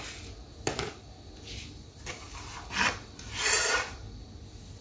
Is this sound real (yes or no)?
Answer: yes